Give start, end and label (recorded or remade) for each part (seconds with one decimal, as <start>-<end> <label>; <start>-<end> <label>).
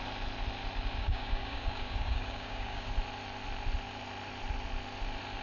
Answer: 0.0-1.0 recorded; 1.0-2.9 remade; 2.9-5.4 recorded